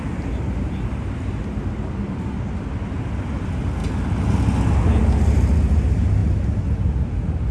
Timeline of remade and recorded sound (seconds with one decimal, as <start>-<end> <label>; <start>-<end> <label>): 0.0-7.5 recorded

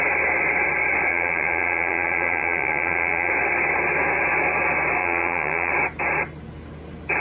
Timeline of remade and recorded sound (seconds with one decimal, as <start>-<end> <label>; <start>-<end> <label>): 0.0-1.1 recorded; 1.1-3.3 remade; 3.3-5.0 recorded; 5.0-5.7 remade; 5.7-7.2 recorded

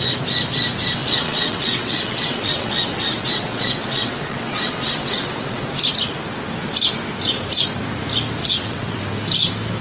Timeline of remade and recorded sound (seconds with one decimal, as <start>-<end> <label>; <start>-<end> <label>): 0.0-1.0 recorded; 1.0-5.7 remade; 5.7-8.4 recorded; 8.4-9.0 remade; 9.0-9.8 recorded

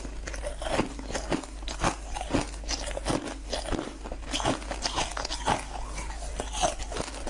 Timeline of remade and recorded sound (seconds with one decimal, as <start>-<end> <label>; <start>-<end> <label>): 0.0-7.3 recorded